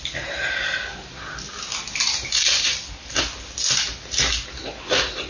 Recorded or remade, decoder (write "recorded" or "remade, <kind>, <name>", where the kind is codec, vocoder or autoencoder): recorded